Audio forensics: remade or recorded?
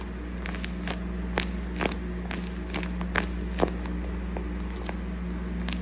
recorded